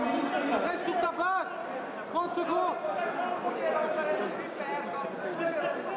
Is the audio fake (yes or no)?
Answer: no